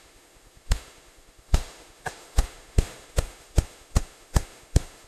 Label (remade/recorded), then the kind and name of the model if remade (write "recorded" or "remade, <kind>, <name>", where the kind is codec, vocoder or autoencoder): remade, autoencoder, DAC-VAE